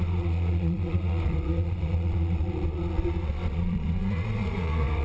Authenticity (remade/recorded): remade